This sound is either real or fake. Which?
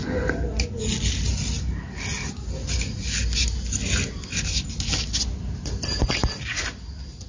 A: real